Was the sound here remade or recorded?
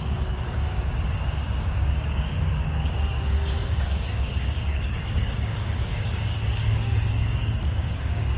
remade